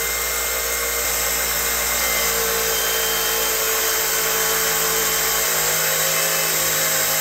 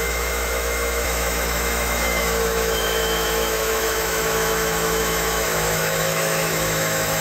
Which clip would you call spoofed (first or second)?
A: second